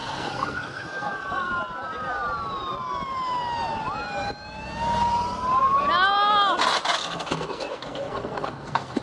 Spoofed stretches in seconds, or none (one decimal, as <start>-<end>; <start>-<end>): 0.0-1.5; 7.0-9.0